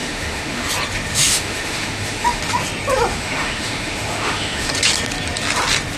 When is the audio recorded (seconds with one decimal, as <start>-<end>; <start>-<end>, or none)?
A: 0.7-1.1; 2.4-3.1; 4.7-6.0